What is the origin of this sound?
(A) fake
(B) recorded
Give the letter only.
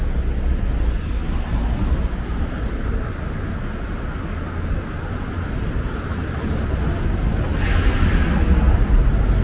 B